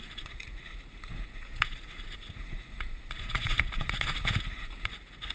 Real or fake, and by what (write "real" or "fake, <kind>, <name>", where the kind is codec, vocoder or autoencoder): fake, vocoder, Vocos